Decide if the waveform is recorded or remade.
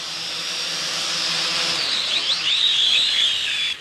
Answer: recorded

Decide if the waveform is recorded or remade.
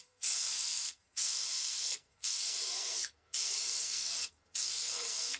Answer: remade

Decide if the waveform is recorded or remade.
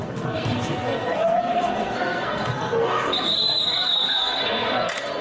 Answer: remade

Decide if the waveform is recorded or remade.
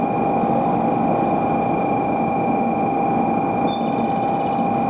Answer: recorded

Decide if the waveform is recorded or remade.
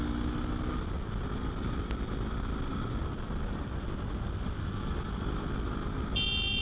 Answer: recorded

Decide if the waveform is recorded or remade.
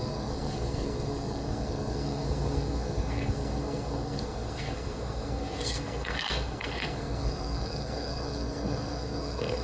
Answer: remade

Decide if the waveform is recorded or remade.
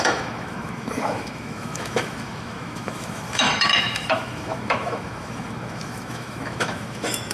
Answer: remade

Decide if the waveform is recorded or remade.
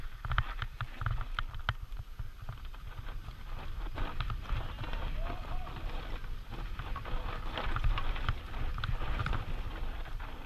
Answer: recorded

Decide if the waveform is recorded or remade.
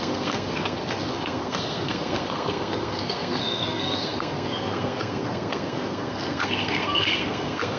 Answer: remade